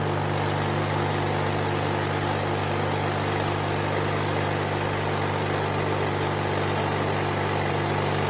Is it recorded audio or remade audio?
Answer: recorded